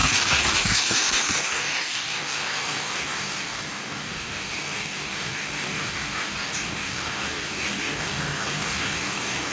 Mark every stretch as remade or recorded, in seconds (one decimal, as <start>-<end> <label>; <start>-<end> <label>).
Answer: 0.0-9.5 remade